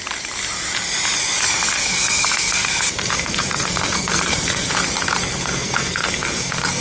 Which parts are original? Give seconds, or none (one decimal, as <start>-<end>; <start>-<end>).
0.0-1.8; 4.7-5.3